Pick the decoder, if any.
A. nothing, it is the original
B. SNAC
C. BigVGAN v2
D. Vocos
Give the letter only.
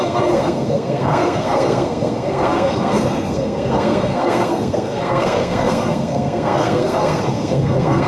B